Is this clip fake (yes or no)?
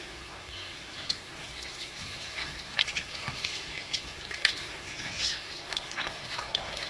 yes